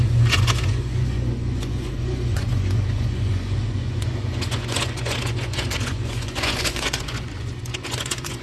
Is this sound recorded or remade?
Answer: remade